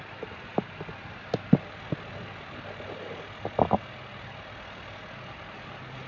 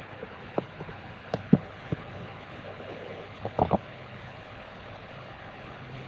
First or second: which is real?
first